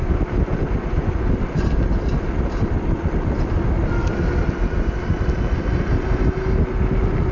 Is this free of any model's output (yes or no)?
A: yes